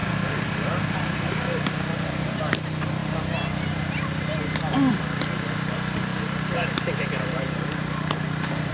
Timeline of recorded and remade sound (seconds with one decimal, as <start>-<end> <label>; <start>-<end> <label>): 0.0-2.4 remade; 2.4-6.1 recorded; 6.1-8.7 remade